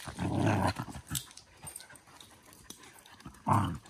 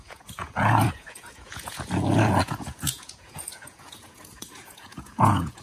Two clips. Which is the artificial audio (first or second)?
second